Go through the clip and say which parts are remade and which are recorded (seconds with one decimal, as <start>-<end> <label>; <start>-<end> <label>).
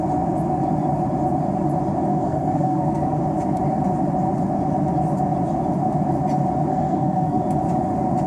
0.0-2.1 recorded; 2.1-3.2 remade; 3.2-6.7 recorded; 6.7-7.4 remade; 7.4-8.3 recorded